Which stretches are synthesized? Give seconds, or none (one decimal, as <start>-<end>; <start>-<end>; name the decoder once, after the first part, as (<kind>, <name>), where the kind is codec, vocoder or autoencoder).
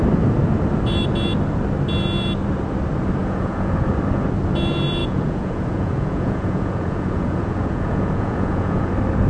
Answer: 3.2-3.9 (vocoder, Vocos); 5.0-8.9